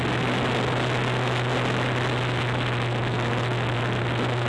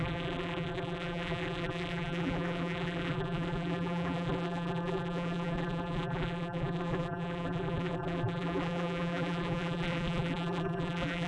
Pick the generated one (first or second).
second